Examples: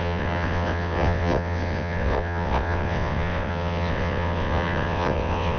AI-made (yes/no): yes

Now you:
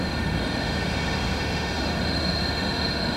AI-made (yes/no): yes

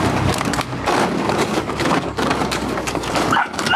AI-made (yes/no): yes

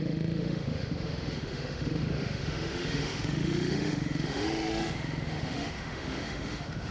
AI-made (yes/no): yes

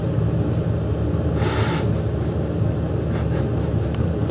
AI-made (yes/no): no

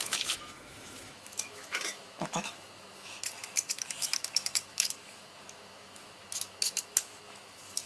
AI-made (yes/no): yes